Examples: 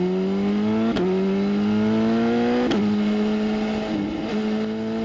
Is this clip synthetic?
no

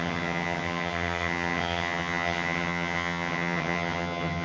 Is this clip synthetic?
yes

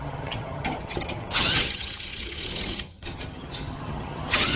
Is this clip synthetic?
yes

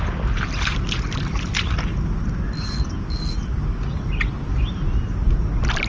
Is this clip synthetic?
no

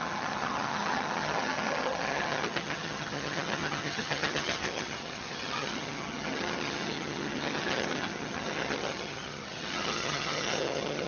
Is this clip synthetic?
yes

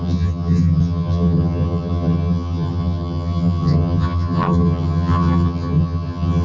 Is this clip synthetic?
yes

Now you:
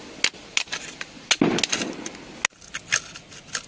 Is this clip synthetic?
no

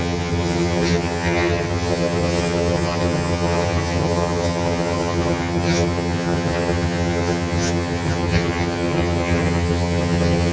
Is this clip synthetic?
yes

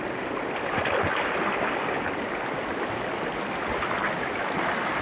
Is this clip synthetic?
no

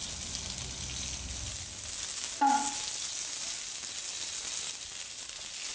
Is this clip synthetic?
no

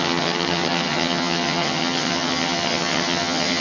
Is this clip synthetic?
yes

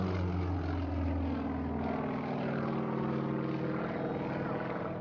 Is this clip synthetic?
no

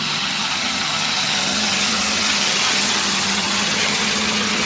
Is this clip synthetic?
yes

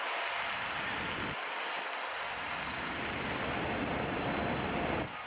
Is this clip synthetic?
no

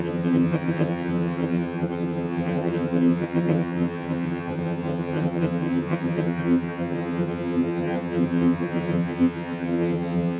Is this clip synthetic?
yes